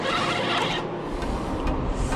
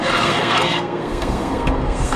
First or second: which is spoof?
second